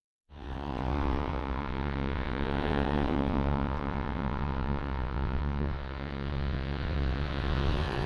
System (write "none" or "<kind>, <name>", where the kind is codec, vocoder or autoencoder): vocoder, WaveNeXt